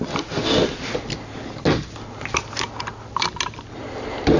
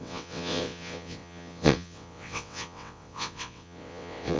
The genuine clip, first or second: first